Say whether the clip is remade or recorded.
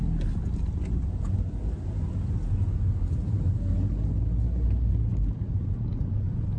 recorded